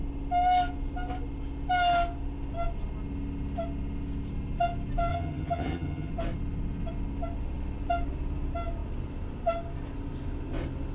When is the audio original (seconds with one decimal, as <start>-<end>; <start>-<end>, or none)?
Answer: 0.0-5.1; 6.1-10.9